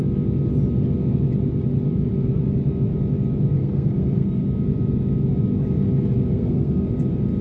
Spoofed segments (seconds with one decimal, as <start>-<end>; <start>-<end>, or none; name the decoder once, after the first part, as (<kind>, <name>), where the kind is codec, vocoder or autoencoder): 3.6-4.4 (codec, SNAC); 6.3-6.9